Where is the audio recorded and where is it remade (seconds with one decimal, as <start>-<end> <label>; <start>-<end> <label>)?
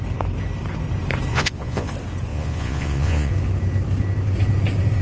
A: 0.0-1.3 recorded; 1.3-1.9 remade; 1.9-2.3 recorded; 2.3-3.3 remade; 3.3-5.0 recorded